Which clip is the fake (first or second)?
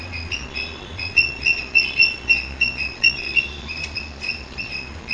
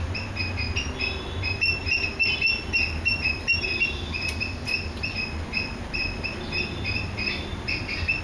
first